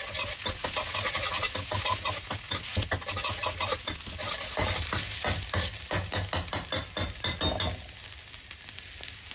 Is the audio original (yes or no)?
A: yes